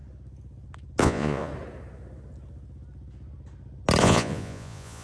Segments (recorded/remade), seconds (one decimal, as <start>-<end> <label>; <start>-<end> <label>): 0.0-1.0 recorded; 1.0-1.5 remade; 1.5-4.0 recorded; 4.0-5.0 remade